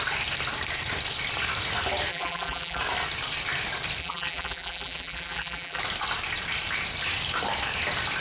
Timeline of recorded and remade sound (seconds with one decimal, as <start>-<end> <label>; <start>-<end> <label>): 0.0-2.1 recorded; 2.1-2.8 remade; 2.8-4.0 recorded; 4.0-5.8 remade; 5.8-8.2 recorded